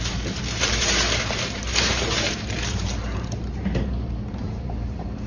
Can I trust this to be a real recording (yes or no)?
no